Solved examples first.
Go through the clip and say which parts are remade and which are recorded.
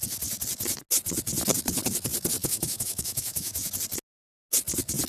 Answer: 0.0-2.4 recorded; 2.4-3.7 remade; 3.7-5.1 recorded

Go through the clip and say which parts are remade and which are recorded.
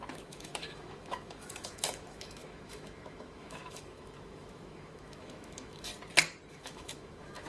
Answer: 0.0-5.9 remade; 5.9-6.5 recorded; 6.5-7.5 remade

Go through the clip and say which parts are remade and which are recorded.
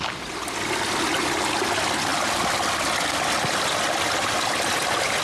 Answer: 0.0-5.2 recorded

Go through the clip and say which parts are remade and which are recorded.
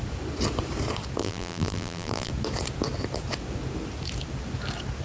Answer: 0.0-1.2 recorded; 1.2-2.3 remade; 2.3-5.0 recorded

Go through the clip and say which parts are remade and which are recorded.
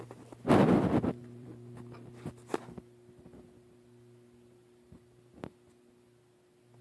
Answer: 0.0-1.2 recorded; 1.2-5.3 remade; 5.3-6.8 recorded